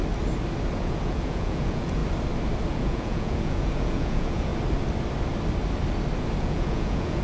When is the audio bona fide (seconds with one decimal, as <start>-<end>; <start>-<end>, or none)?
0.0-0.8; 2.0-2.7; 4.5-6.4